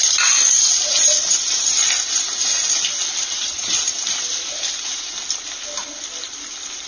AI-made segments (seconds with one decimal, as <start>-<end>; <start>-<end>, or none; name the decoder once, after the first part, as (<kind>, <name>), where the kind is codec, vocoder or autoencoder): 3.1-3.8 (vocoder, Vocos)